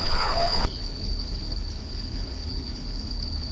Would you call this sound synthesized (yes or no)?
yes